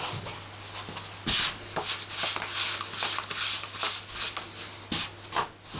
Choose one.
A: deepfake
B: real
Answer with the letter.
B